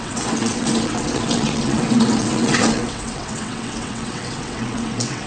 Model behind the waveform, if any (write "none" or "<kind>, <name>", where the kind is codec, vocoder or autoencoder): vocoder, WaveNeXt